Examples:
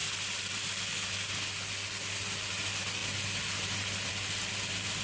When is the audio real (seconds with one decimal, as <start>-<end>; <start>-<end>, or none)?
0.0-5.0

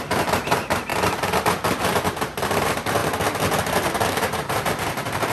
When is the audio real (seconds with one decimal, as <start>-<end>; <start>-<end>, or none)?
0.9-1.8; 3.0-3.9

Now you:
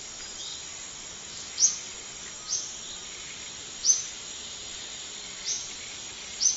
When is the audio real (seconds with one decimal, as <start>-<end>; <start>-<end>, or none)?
0.0-6.6

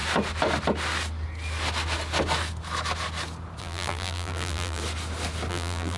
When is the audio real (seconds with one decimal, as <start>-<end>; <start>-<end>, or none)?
0.0-3.6; 4.8-5.5

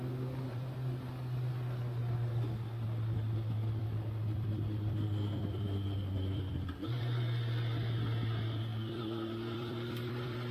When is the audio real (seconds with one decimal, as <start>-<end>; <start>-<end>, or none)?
0.0-3.8; 7.0-8.7

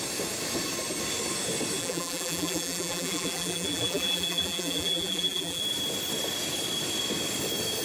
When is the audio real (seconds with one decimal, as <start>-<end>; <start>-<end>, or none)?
0.0-1.8; 5.6-7.8

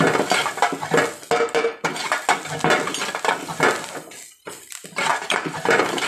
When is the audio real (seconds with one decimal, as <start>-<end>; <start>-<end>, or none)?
0.0-5.1

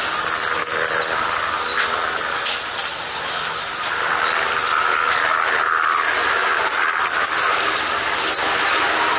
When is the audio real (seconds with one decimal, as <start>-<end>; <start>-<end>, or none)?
0.0-9.2